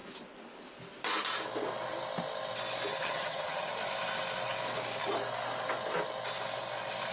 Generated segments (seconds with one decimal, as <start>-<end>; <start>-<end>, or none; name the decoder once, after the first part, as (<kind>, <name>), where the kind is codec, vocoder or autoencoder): 2.9-3.7 (vocoder, HiFi-GAN)